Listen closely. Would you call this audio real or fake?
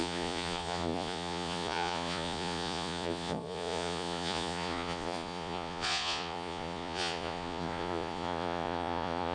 fake